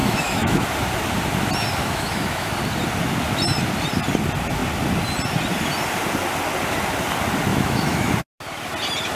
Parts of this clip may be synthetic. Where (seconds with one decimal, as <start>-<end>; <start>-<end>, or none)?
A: 0.0-0.6; 1.8-2.5; 7.5-8.1